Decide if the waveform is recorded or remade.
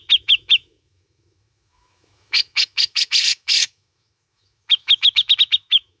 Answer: remade